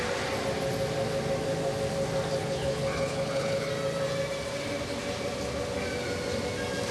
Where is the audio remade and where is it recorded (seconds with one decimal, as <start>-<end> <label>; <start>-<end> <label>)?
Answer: 0.0-2.4 recorded; 2.4-3.7 remade; 3.7-6.9 recorded